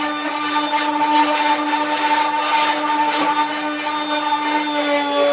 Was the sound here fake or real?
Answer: real